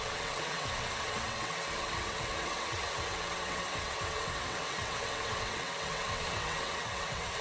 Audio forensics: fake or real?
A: fake